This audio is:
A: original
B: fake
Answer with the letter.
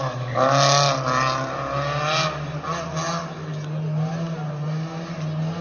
A